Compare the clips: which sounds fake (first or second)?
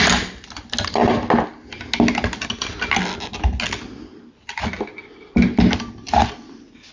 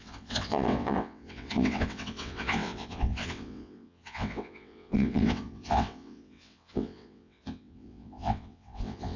second